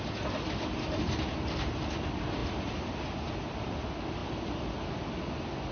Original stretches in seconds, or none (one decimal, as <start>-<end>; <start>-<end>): 0.0-5.7